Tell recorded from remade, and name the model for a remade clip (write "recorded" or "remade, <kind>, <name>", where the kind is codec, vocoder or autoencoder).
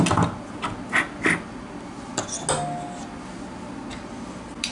recorded